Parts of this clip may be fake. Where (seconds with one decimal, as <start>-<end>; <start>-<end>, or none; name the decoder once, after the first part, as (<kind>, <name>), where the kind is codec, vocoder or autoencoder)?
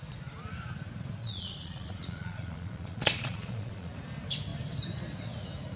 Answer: 1.2-3.9 (vocoder, Vocos)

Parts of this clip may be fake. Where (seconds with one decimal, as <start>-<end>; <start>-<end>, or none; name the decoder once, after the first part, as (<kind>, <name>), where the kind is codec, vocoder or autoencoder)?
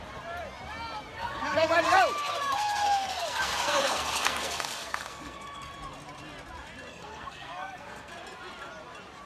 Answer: 1.1-1.7 (codec, SNAC); 2.1-5.7; 6.9-8.1